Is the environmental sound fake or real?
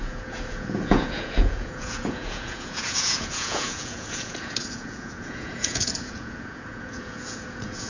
fake